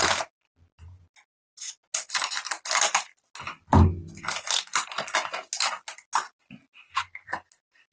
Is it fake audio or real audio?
real